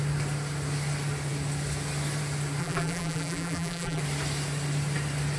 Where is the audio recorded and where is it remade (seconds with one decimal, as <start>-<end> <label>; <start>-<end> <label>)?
0.0-2.6 recorded; 2.6-4.0 remade; 4.0-5.4 recorded